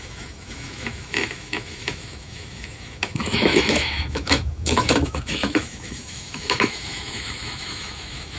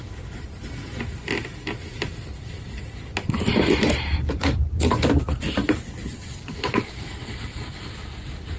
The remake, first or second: first